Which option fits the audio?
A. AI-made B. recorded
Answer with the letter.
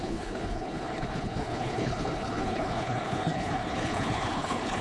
A